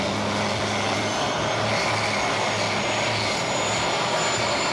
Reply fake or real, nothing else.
real